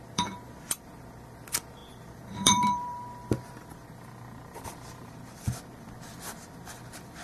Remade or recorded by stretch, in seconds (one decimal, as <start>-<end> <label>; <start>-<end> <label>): 0.0-7.2 remade